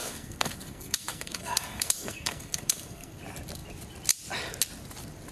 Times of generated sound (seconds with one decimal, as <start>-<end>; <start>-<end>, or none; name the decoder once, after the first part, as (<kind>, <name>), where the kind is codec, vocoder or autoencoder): 0.0-3.2 (codec, SNAC)